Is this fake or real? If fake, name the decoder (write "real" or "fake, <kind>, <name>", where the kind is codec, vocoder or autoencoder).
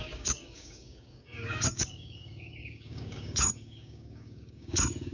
fake, codec, DAC